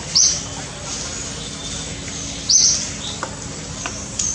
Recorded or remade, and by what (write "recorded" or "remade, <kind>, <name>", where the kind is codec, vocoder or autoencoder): recorded